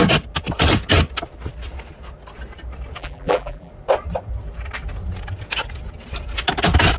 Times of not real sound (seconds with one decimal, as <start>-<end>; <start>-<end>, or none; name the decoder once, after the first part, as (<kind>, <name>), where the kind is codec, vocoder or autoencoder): 3.0-3.7 (vocoder, BigVGAN v2)

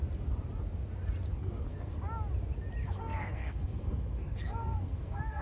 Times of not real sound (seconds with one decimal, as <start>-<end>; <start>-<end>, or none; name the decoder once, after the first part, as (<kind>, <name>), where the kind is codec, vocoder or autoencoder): 1.3-2.0 (codec, SNAC); 2.8-5.4

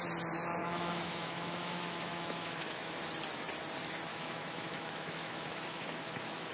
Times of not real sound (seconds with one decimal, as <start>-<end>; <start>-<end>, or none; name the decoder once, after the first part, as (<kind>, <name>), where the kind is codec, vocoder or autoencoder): 0.6-3.0 (autoencoder, DAC-VAE); 4.1-6.5

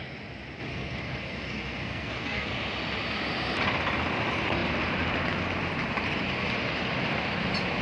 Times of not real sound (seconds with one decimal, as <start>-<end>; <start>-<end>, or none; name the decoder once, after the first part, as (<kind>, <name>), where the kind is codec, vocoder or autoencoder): 0.7-2.5 (codec, SNAC)

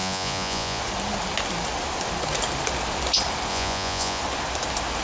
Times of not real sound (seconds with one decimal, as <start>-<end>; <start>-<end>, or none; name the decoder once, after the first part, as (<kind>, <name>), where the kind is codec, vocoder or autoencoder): 0.0-0.8 (vocoder, Vocos); 3.5-4.2